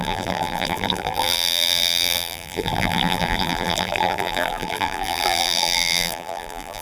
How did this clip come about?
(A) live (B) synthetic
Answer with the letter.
B